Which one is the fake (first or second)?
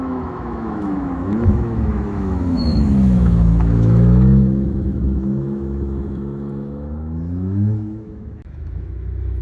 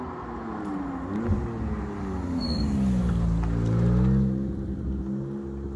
first